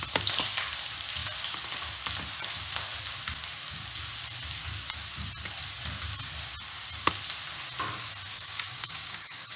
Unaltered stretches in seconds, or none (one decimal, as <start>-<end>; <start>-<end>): 0.0-8.3